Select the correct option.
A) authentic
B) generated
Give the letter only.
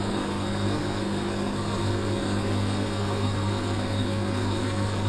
B